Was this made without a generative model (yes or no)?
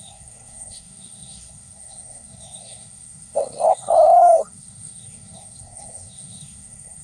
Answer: no